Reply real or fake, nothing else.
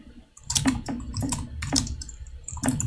fake